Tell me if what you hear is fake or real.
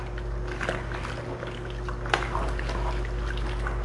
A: real